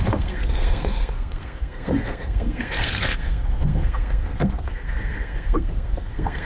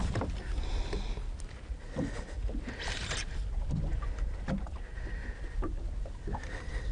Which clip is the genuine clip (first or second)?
second